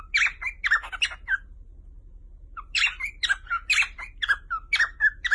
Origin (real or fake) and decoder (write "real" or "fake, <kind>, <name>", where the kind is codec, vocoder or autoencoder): real